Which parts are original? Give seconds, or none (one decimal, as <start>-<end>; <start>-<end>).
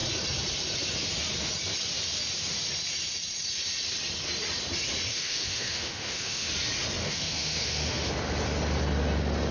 0.0-5.1; 6.5-7.0; 8.1-9.5